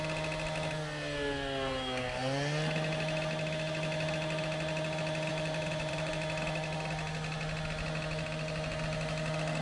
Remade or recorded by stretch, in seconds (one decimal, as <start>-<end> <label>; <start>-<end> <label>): 0.0-5.3 recorded; 5.3-6.1 remade; 6.1-9.6 recorded